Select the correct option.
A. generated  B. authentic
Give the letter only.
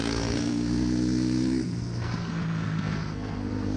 A